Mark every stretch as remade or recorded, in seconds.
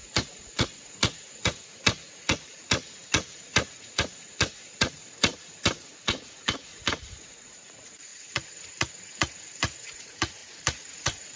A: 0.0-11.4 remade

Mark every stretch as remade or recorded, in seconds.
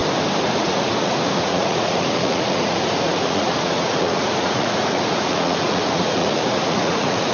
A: 0.0-0.6 recorded; 0.6-7.3 remade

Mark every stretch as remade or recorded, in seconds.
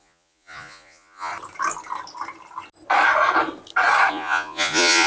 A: 0.0-1.3 remade; 1.3-4.1 recorded; 4.1-5.1 remade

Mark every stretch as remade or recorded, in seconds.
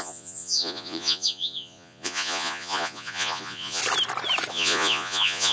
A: 0.0-3.8 remade; 3.8-4.5 recorded; 4.5-5.5 remade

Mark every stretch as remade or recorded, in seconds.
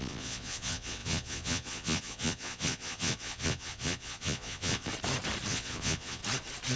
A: 0.0-4.9 remade; 4.9-5.5 recorded; 5.5-6.2 remade; 6.2-6.8 recorded